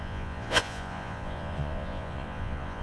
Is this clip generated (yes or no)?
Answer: yes